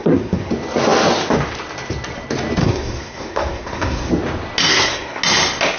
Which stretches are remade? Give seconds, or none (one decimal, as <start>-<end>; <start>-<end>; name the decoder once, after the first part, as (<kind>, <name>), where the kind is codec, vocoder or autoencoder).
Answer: 0.0-0.5 (codec, SNAC); 2.6-4.1; 4.7-5.2